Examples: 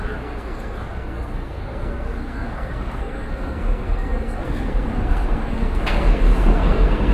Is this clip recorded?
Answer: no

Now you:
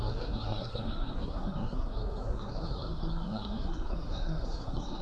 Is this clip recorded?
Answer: no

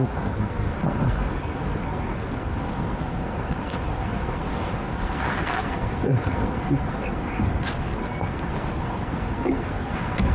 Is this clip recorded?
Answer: no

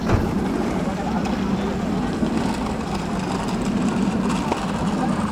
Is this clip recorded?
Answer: yes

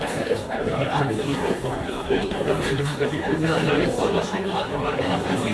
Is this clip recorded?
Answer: no